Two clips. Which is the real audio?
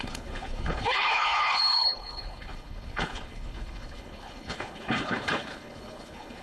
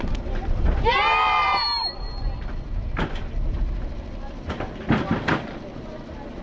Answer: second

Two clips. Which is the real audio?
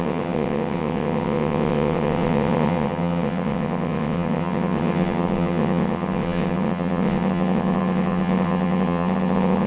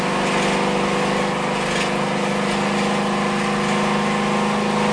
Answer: second